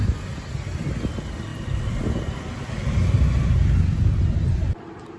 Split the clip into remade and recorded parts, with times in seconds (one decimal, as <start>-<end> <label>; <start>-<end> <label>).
0.0-5.2 recorded